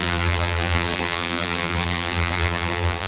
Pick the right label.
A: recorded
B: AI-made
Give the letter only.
B